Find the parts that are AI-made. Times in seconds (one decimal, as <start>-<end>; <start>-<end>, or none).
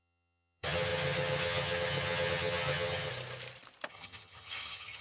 0.0-3.1; 3.9-5.0